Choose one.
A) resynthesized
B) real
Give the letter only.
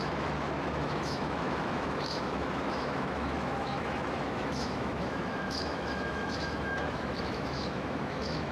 A